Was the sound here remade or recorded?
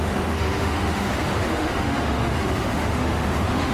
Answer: remade